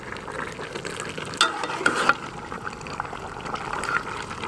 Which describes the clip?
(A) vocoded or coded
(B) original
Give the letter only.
B